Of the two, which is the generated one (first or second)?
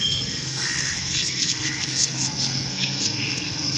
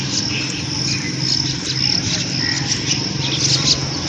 first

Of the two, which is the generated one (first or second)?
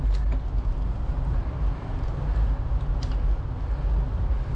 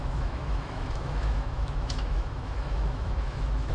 second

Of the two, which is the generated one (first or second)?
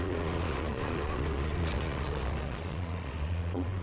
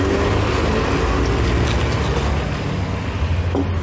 first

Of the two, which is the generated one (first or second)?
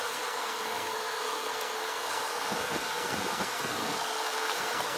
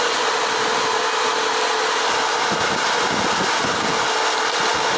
first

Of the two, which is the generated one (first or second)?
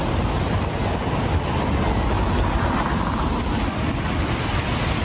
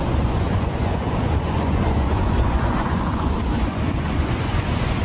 second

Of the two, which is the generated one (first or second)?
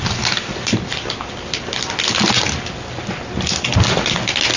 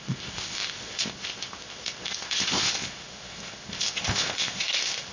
second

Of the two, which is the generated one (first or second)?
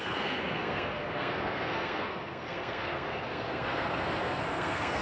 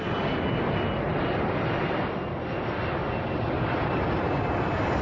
first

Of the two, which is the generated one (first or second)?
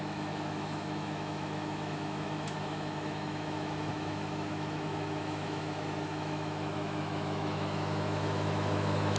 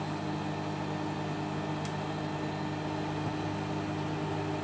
first